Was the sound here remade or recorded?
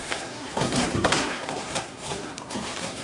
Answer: remade